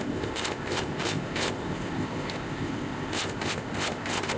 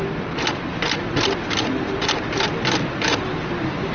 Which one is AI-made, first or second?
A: first